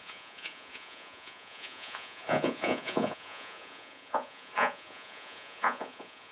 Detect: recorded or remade remade